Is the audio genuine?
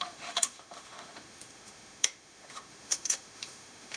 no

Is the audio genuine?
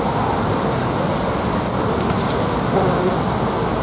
yes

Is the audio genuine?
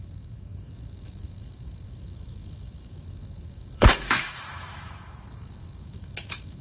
no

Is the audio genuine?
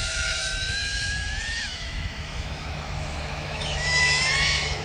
no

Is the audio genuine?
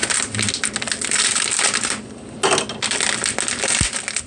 yes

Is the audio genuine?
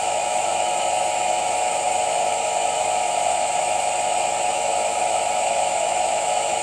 no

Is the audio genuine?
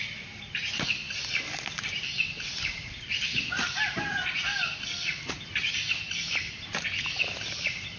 yes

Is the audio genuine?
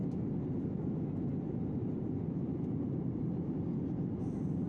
yes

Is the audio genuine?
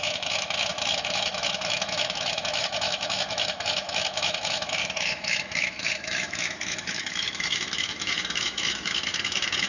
no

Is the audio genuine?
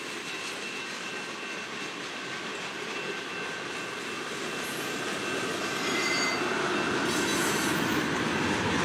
yes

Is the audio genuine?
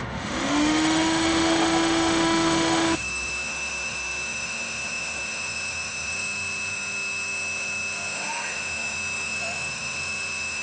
no